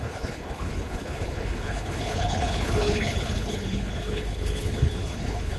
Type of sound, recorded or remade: remade